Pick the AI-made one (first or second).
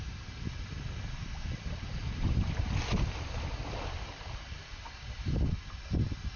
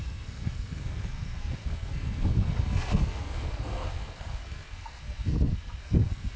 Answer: second